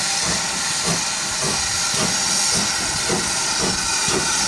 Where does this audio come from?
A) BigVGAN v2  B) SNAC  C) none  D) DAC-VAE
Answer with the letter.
C